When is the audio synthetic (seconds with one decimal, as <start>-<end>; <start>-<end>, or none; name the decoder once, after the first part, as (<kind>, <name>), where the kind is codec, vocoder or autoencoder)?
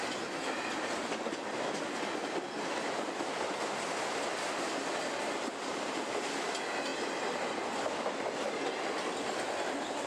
none